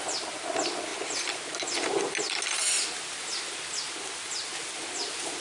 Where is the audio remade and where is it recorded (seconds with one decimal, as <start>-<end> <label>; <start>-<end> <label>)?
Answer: 0.0-5.4 recorded